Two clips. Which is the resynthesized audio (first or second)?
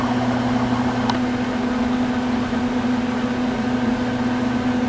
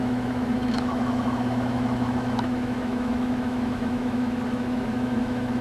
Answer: second